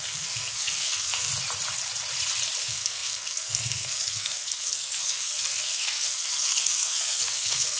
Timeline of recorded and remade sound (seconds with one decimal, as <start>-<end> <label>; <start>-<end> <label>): 0.0-1.3 remade; 1.3-2.6 recorded; 2.6-7.8 remade